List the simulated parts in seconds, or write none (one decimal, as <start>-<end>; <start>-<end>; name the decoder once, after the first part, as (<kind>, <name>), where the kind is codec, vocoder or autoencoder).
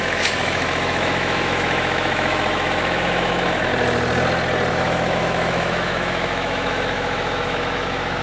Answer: 0.0-3.7 (autoencoder, DAC-VAE); 4.7-8.2